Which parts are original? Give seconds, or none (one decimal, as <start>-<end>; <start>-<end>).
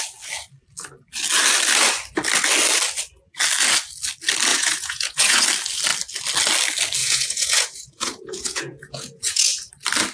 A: 0.0-4.5; 5.4-7.0; 9.7-10.1